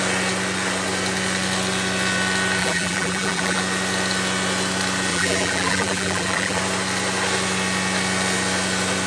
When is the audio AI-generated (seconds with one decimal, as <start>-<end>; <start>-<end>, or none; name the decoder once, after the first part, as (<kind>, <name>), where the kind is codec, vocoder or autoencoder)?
2.6-3.6 (vocoder, BigVGAN v2); 5.1-6.6